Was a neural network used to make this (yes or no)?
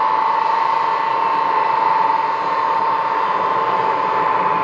no